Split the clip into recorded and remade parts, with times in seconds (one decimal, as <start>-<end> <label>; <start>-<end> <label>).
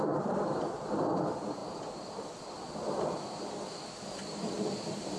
0.0-5.2 remade